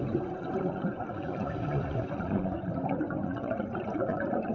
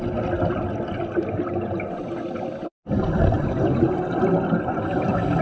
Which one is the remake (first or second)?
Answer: first